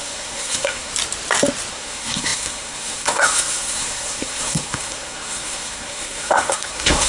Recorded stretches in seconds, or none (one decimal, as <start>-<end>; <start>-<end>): 0.9-1.7